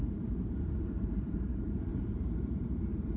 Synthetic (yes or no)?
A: yes